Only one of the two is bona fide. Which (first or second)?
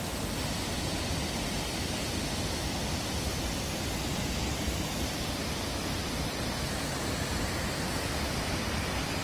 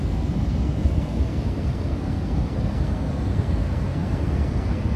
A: first